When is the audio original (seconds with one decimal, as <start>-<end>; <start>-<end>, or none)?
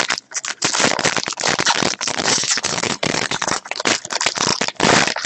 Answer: 0.0-2.1; 3.8-5.3